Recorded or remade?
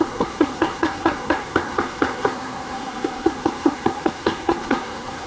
remade